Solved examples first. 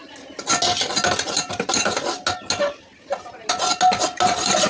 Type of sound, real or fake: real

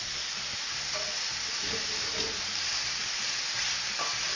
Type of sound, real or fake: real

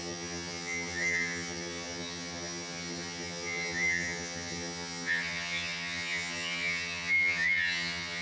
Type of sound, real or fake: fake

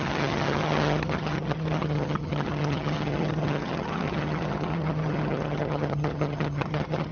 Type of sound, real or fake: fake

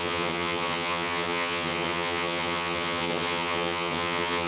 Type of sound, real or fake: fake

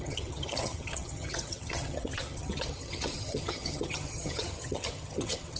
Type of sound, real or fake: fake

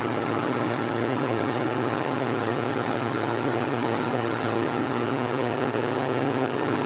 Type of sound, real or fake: fake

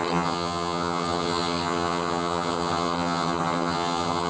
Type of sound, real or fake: fake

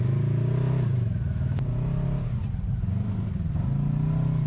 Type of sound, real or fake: real